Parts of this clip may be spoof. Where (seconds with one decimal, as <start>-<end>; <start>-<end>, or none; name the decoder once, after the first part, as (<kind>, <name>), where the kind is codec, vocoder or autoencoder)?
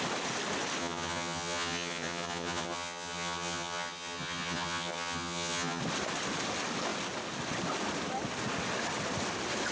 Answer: 0.8-5.8 (vocoder, HiFi-GAN)